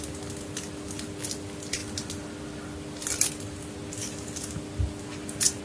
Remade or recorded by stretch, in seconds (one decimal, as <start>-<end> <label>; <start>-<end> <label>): 0.0-5.6 recorded